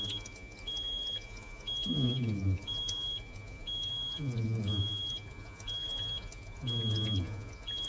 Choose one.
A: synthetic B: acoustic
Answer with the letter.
A